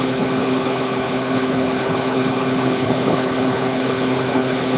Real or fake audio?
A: fake